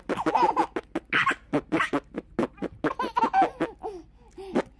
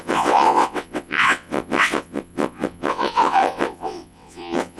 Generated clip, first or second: second